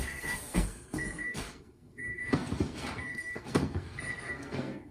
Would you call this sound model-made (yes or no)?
yes